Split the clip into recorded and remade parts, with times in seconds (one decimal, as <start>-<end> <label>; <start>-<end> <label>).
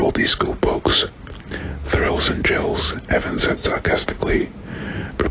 0.0-5.3 recorded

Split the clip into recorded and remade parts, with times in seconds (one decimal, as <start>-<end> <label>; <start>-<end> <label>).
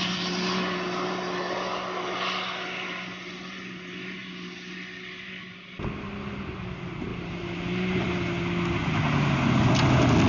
0.0-10.3 recorded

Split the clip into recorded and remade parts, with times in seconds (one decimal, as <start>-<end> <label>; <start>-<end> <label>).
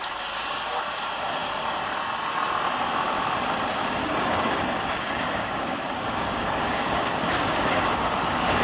0.0-4.0 recorded; 4.0-8.2 remade; 8.2-8.6 recorded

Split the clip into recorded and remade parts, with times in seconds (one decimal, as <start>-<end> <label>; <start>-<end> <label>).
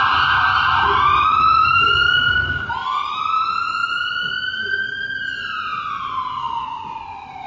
0.0-1.6 recorded; 1.6-2.7 remade; 2.7-7.5 recorded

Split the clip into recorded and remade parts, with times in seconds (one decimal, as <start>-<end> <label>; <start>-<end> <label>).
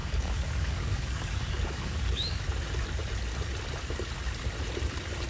0.0-2.4 remade; 2.4-5.3 recorded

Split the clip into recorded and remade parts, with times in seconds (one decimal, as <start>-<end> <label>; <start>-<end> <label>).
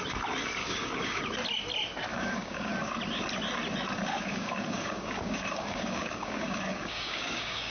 0.0-0.6 recorded; 0.6-1.2 remade; 1.2-2.1 recorded; 2.1-2.7 remade; 2.7-4.1 recorded; 4.1-7.7 remade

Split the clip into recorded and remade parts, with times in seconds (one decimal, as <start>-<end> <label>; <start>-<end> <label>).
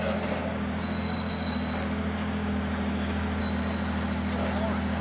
0.0-0.4 recorded; 0.4-3.4 remade; 3.4-5.0 recorded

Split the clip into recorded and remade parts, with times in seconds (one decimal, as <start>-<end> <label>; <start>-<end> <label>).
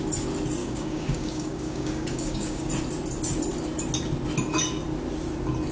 0.0-0.6 recorded; 0.6-2.7 remade; 2.7-5.7 recorded